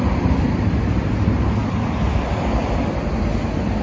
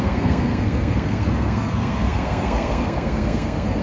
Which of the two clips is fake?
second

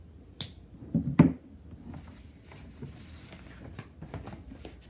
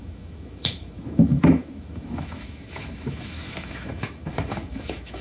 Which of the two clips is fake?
second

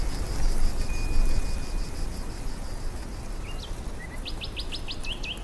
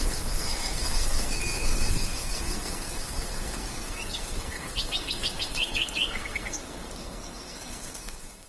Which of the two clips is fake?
second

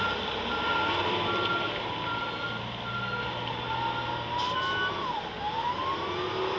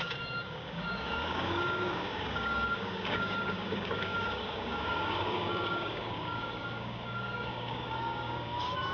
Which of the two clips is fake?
second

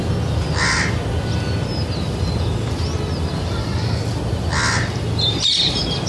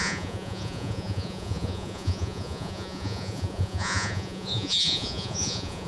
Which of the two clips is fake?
second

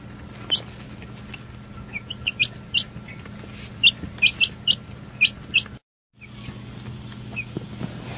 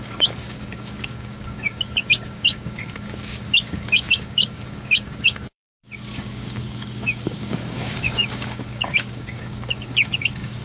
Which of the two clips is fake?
second